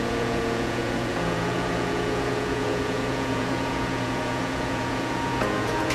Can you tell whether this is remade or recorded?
remade